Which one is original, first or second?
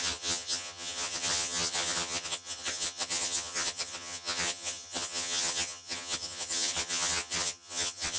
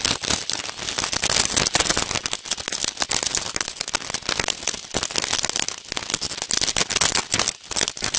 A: second